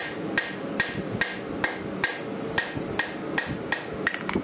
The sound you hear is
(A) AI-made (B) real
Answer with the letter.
B